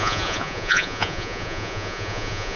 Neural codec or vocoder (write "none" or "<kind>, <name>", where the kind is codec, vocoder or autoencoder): vocoder, Vocos